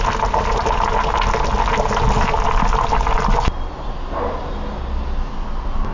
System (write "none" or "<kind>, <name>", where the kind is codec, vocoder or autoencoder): none